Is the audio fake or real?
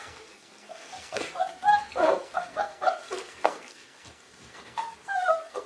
fake